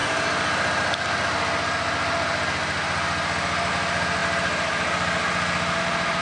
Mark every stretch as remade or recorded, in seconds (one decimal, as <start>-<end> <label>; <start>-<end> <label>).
0.0-3.7 recorded; 3.7-4.2 remade; 4.2-5.8 recorded; 5.8-6.2 remade